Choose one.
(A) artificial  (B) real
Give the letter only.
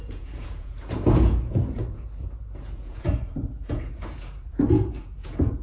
A